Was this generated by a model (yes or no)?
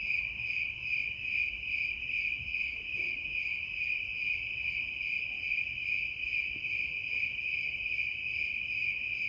no